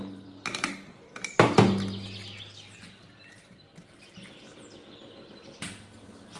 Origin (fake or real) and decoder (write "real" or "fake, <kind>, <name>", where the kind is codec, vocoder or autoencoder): real